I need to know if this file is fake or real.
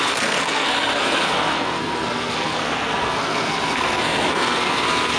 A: fake